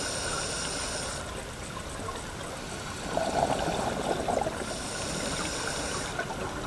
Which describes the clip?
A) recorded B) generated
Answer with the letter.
A